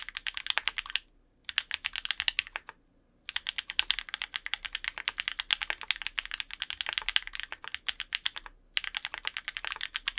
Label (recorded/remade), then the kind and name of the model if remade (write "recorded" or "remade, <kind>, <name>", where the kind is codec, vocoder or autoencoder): recorded